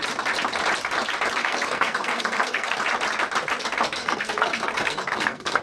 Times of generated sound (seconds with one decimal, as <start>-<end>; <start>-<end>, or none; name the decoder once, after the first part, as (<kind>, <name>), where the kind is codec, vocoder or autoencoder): 1.4-2.8 (codec, SNAC); 4.0-5.6

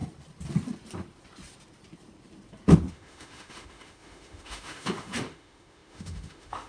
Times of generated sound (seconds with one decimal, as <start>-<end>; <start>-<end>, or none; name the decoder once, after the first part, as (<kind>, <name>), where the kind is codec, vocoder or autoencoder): 2.9-6.7 (autoencoder, DAC-VAE)

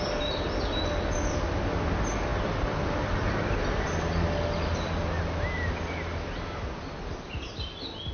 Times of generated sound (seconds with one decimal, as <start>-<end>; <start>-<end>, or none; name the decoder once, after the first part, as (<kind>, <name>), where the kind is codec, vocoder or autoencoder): none

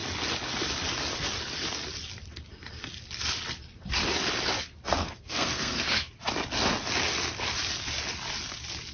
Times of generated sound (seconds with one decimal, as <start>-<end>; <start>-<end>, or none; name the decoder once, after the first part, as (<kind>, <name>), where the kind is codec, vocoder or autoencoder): 5.0-6.1 (codec, SNAC)

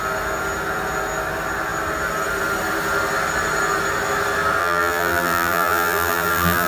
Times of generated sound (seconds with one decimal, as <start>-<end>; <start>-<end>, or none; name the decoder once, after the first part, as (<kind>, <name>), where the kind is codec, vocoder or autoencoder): 4.6-6.7 (vocoder, BigVGAN v2)